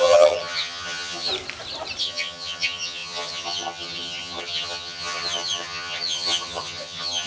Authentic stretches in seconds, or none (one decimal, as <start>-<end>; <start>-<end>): 1.3-2.0